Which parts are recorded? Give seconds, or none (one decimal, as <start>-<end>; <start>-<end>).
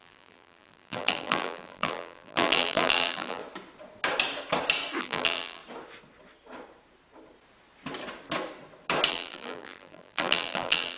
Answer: 3.4-5.0; 5.6-9.1